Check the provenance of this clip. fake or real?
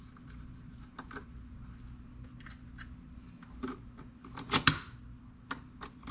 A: real